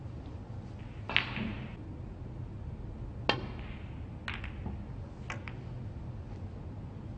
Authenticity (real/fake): real